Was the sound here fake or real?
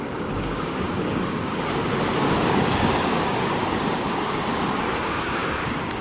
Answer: fake